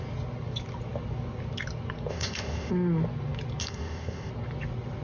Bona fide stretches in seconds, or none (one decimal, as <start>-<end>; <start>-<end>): 0.0-2.1; 2.7-3.6; 4.3-5.0